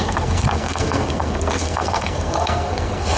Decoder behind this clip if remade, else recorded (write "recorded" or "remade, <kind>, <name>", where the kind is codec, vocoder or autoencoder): remade, codec, SNAC